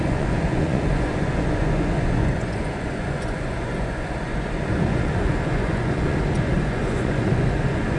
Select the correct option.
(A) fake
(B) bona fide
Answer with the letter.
A